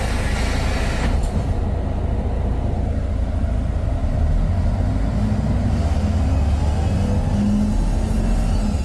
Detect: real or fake real